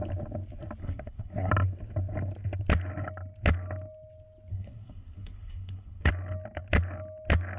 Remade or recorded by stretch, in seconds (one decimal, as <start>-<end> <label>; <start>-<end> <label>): 0.0-0.8 recorded; 0.8-1.5 remade; 1.5-4.5 recorded; 4.5-6.1 remade; 6.1-7.6 recorded